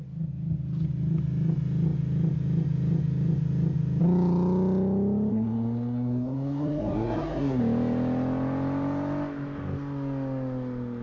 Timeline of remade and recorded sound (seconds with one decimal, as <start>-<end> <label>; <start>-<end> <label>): 0.0-5.3 recorded; 5.3-7.6 remade; 7.6-11.0 recorded